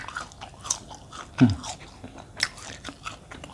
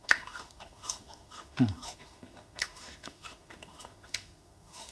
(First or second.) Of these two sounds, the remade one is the second